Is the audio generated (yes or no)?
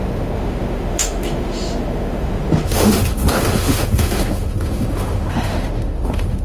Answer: yes